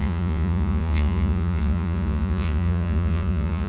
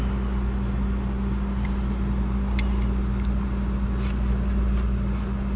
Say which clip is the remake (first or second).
first